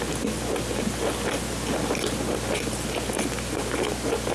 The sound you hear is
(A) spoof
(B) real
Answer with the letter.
B